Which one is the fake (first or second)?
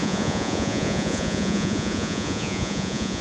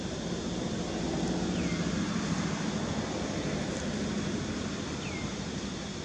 first